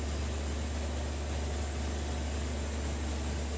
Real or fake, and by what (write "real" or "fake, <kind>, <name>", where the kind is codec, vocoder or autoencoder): real